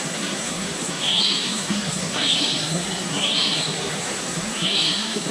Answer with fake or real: fake